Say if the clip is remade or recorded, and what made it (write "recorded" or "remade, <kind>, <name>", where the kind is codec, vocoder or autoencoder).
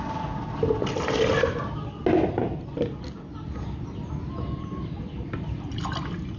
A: recorded